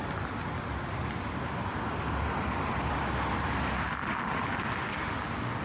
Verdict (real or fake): real